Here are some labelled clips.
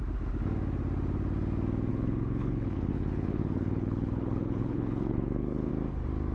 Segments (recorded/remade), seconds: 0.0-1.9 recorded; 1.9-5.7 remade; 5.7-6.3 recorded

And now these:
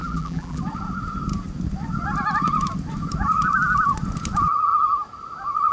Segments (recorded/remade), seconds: 0.0-0.6 remade; 0.6-5.7 recorded

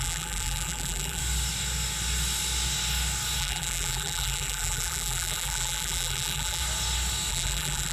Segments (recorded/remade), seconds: 0.0-1.2 remade; 1.2-3.4 recorded; 3.4-6.6 remade; 6.6-7.3 recorded; 7.3-7.9 remade

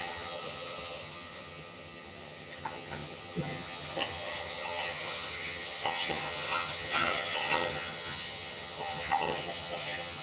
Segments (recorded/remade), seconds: 0.0-10.2 remade

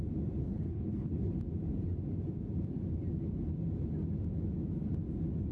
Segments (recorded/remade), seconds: 0.0-0.4 recorded; 0.4-1.3 remade; 1.3-5.5 recorded

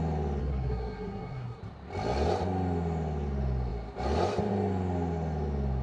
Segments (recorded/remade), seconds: 0.0-0.4 recorded; 0.4-1.6 remade; 1.6-5.8 recorded

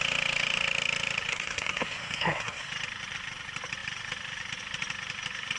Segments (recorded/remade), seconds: 0.0-1.3 recorded; 1.3-2.7 remade; 2.7-5.6 recorded

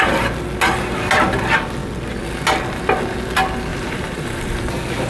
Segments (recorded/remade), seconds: 0.0-3.7 recorded; 3.7-4.6 remade; 4.6-5.1 recorded